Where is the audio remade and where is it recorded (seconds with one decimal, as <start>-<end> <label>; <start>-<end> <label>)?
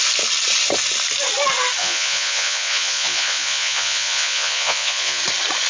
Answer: 0.0-1.8 recorded; 1.8-5.2 remade; 5.2-5.7 recorded